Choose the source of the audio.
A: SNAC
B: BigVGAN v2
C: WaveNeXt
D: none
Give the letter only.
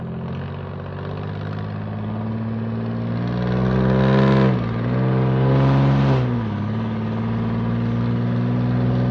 D